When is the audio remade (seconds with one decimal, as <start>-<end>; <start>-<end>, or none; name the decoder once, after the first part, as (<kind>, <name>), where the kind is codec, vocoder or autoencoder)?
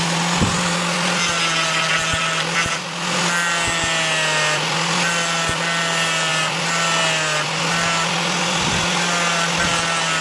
none